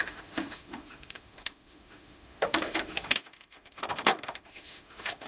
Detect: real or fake fake